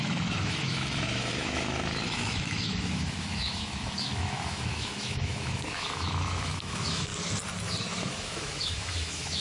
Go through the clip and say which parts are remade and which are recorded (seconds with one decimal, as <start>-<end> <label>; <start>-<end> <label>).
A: 0.0-7.1 remade; 7.1-8.0 recorded; 8.0-9.4 remade